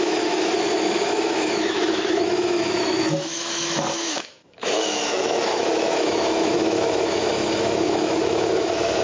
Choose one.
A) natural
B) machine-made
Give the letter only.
B